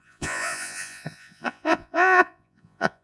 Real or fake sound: fake